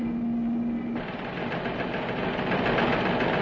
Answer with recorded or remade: recorded